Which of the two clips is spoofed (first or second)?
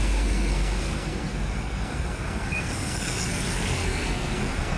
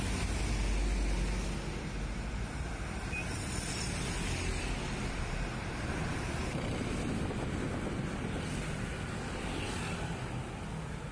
first